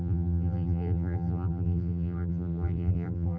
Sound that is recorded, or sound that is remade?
remade